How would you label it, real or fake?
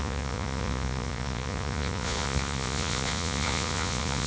fake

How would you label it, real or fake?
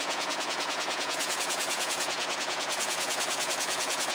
fake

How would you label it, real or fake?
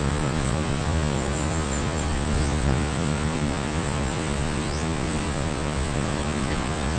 fake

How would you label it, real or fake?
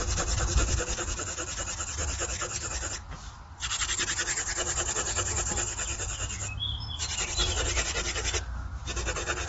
real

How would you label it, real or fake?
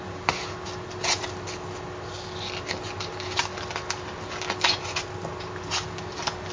real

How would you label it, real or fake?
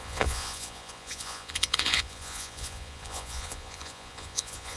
fake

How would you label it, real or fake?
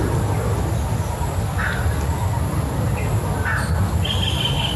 real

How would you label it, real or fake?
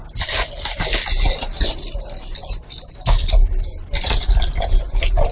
real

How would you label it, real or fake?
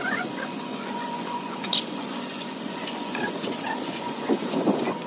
fake